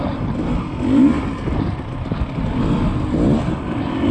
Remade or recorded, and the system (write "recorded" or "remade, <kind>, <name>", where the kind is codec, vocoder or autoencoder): recorded